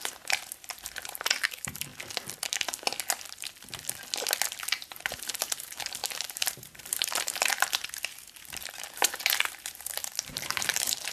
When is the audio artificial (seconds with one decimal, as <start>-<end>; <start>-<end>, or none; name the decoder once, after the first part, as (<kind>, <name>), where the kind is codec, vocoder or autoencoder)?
0.0-1.9 (vocoder, BigVGAN v2); 4.6-11.1